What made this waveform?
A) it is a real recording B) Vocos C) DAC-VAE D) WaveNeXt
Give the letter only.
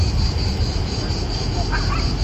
A